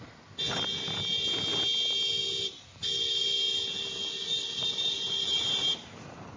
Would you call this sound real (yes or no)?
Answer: yes